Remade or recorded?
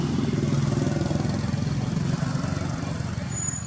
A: recorded